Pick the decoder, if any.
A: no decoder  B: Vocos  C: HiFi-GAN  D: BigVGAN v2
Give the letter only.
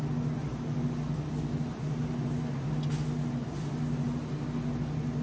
A